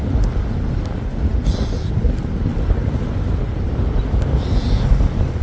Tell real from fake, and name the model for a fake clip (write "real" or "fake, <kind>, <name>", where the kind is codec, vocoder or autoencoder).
real